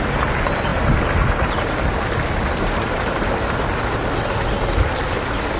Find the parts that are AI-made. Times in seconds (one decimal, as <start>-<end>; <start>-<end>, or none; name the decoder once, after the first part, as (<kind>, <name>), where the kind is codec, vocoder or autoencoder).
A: 0.7-1.7 (vocoder, BigVGAN v2)

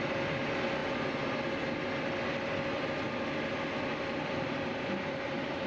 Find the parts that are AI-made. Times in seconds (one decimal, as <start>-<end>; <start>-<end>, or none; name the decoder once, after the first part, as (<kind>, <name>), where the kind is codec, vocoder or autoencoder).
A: 3.9-5.7 (vocoder, BigVGAN v2)

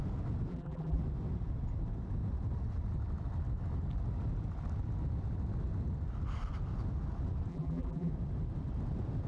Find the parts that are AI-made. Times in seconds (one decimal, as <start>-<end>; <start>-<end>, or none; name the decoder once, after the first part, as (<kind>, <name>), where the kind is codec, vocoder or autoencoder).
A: 0.5-1.0 (vocoder, BigVGAN v2); 7.5-8.1

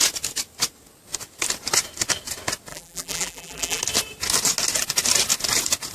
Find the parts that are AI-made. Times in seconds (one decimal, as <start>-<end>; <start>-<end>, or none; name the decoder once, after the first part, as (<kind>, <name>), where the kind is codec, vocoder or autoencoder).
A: 2.7-3.8 (vocoder, BigVGAN v2)

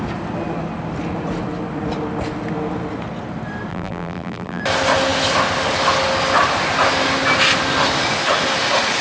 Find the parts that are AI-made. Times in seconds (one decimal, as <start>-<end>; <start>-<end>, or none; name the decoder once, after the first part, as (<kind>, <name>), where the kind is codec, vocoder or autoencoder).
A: 3.7-4.6 (vocoder, BigVGAN v2)

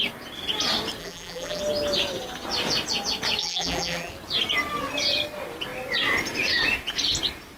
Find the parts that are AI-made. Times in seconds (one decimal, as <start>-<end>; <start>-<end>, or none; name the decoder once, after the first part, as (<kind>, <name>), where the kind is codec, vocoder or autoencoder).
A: 1.0-1.6 (vocoder, BigVGAN v2); 3.4-4.1

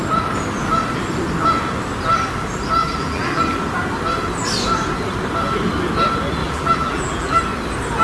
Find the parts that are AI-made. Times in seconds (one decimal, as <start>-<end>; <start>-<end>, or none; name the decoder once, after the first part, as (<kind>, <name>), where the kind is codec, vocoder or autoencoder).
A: 2.8-3.4 (vocoder, BigVGAN v2); 6.4-7.4